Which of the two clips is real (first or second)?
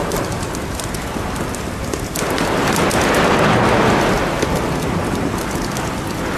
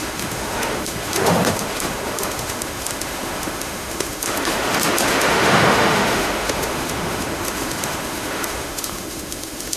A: first